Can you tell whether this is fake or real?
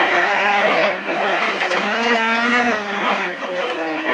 fake